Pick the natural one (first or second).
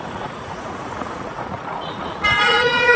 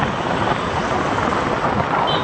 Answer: second